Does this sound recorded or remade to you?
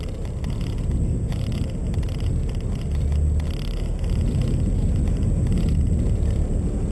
recorded